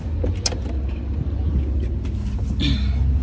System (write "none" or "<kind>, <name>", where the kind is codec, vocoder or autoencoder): none